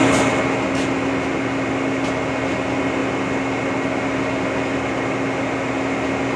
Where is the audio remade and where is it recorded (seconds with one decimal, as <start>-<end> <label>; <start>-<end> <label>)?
0.0-6.4 recorded